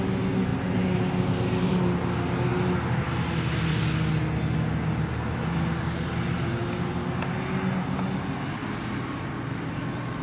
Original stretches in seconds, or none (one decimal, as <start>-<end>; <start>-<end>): 0.0-10.2